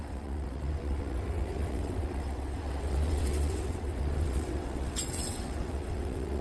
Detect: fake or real fake